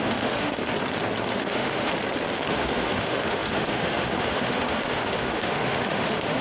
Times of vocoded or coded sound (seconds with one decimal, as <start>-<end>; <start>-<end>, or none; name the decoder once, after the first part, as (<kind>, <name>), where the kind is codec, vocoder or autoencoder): 0.0-0.6 (autoencoder, DAC-VAE); 1.3-1.9; 2.5-6.4